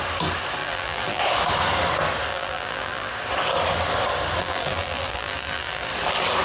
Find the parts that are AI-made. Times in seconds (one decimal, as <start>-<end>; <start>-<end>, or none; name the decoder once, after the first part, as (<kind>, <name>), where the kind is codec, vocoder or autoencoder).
0.6-1.2 (vocoder, BigVGAN v2); 2.3-3.1; 4.4-5.9